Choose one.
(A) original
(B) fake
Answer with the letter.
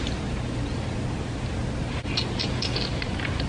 A